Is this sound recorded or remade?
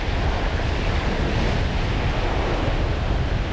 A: recorded